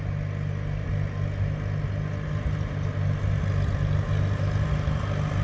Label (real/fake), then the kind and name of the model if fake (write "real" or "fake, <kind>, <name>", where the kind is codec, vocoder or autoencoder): real